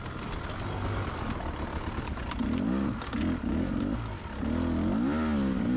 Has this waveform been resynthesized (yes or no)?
no